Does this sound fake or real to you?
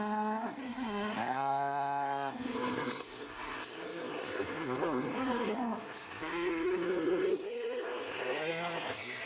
fake